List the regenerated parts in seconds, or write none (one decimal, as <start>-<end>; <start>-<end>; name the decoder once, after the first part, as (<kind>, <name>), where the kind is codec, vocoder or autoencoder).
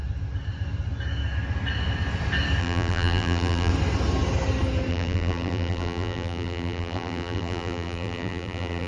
2.6-3.7 (vocoder, BigVGAN v2); 4.9-8.9